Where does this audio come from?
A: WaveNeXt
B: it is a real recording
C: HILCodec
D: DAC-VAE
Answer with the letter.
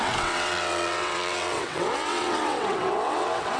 A